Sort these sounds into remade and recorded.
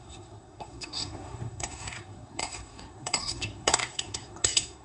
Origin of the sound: remade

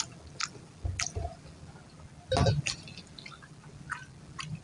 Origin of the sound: recorded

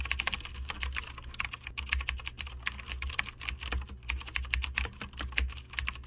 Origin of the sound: recorded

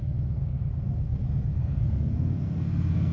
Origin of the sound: remade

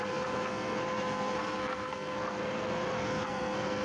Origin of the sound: remade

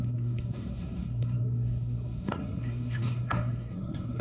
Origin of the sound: remade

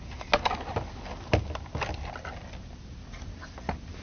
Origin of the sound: recorded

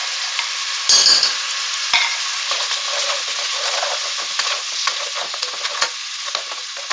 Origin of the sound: recorded